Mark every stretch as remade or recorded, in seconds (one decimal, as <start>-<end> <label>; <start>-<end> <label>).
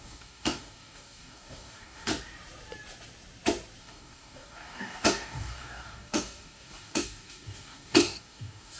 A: 0.0-2.1 remade; 2.1-3.8 recorded; 3.8-8.8 remade